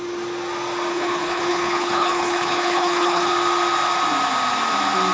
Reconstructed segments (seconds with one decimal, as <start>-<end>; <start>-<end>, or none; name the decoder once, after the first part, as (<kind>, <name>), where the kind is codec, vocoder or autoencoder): 0.9-3.3 (codec, HILCodec)